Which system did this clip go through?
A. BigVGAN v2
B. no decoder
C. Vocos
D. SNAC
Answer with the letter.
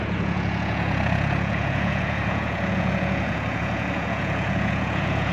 C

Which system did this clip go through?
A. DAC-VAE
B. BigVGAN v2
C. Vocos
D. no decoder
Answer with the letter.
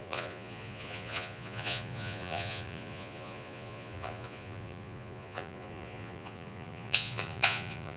C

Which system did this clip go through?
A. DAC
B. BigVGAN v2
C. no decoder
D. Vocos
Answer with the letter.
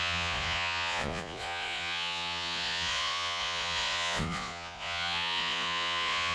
D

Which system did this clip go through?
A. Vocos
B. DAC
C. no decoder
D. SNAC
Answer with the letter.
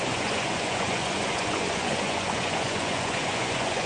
A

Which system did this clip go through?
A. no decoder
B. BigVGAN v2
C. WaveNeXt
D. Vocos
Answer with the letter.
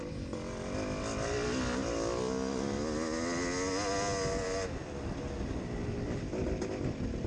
A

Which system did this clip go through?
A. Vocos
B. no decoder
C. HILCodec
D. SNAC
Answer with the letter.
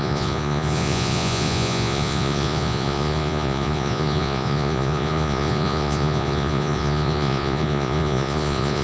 A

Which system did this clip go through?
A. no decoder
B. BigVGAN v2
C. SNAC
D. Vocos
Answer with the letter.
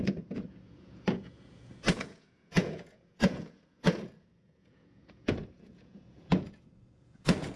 D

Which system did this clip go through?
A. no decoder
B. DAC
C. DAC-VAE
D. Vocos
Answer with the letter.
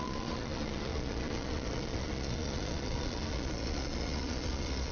D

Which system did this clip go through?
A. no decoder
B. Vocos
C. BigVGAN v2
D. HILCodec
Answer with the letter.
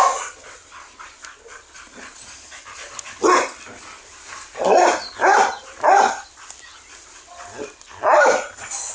A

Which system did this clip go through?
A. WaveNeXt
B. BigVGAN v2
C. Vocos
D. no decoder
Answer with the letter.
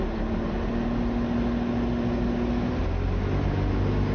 D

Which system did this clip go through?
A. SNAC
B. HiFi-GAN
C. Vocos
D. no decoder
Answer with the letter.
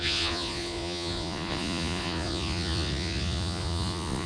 C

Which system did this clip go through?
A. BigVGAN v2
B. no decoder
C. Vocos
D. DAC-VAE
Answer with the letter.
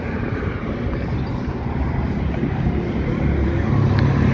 B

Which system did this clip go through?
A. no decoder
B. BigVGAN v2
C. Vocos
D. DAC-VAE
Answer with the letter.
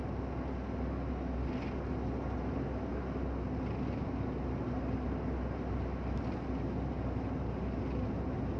A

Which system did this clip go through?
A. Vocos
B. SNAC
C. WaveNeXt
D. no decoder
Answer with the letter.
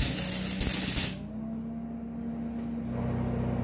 D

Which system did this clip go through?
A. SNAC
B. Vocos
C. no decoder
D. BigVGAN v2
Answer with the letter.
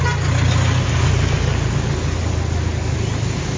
C